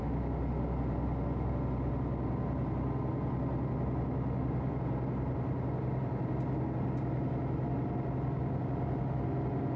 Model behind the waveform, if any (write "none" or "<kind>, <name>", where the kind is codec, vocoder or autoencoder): none